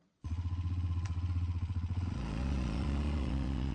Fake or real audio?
fake